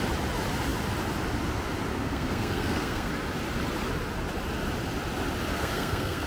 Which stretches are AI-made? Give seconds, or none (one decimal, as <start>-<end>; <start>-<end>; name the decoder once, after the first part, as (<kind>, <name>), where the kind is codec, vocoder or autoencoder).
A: 1.9-3.1 (codec, SNAC); 5.5-6.3